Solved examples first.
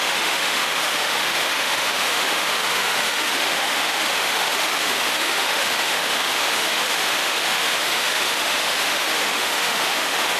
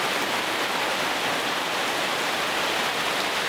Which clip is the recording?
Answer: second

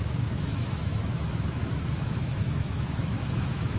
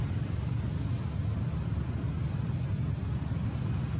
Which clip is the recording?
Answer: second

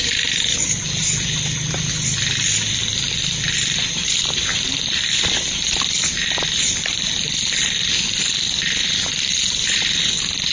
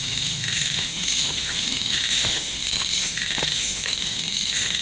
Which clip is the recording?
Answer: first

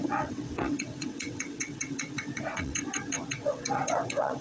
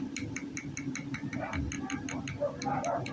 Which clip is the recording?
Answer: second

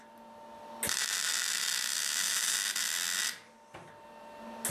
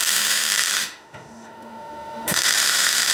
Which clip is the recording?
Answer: first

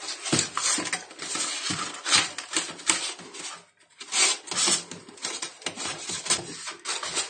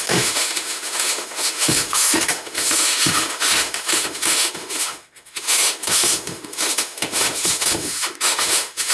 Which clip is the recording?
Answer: first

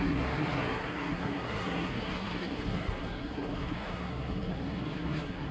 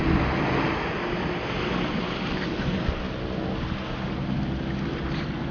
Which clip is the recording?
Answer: second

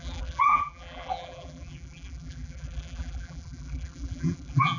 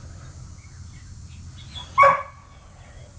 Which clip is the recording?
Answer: second